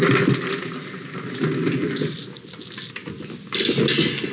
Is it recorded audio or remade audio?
recorded